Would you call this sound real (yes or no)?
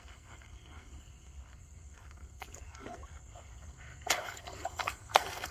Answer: no